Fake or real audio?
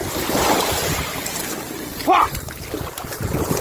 real